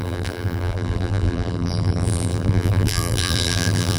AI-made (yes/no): yes